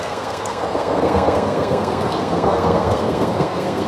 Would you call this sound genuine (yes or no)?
no